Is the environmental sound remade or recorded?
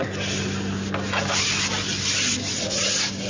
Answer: recorded